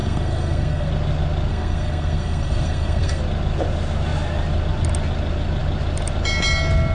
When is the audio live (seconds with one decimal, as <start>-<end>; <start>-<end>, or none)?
0.9-1.5; 3.2-6.9